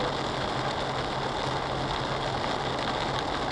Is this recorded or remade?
recorded